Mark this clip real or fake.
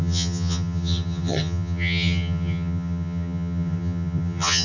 fake